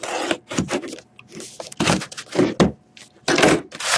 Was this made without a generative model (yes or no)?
yes